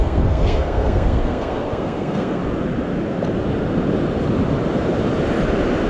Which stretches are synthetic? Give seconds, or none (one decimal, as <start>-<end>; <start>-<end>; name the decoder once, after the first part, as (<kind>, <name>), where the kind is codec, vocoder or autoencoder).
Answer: 0.0-2.4 (codec, SNAC)